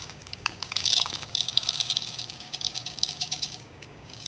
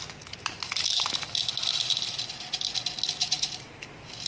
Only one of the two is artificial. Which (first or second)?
first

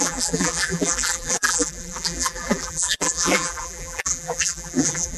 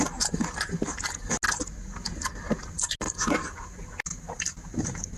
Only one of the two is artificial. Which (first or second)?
first